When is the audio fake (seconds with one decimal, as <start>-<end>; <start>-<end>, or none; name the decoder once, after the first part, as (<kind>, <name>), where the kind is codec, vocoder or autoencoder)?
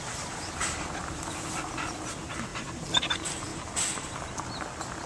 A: 3.5-4.2 (vocoder, BigVGAN v2)